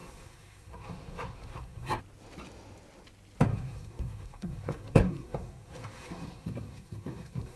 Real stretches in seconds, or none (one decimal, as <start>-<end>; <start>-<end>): 2.0-3.5